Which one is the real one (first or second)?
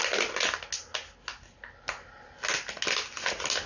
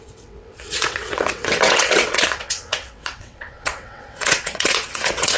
first